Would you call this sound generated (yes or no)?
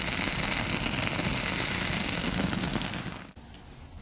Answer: no